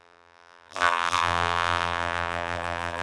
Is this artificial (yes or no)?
yes